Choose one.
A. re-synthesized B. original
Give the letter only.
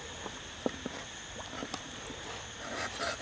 B